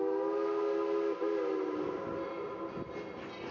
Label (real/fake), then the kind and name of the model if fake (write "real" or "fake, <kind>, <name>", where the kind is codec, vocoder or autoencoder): real